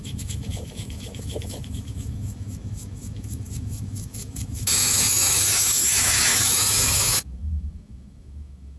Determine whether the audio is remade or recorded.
remade